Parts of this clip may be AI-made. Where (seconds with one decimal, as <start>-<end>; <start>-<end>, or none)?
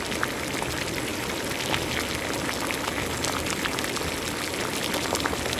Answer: none